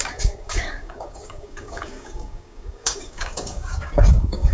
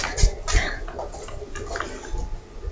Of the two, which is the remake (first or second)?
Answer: first